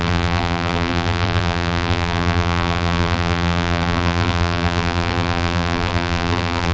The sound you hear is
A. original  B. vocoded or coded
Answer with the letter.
B